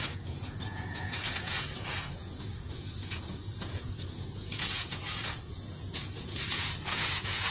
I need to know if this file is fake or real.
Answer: fake